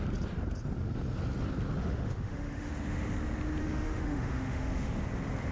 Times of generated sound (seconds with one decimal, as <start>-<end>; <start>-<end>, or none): 1.8-2.7; 3.6-5.0